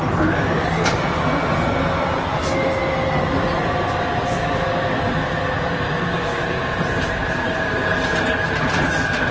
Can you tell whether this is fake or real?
real